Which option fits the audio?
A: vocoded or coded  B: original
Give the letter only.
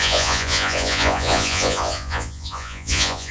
A